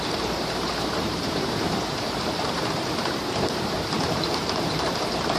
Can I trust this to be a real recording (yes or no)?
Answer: no